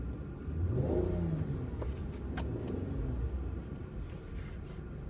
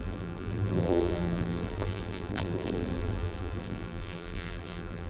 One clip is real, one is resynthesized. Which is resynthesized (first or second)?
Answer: second